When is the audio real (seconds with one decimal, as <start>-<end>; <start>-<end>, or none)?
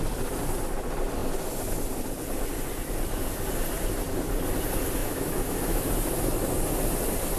0.0-5.0; 5.9-7.4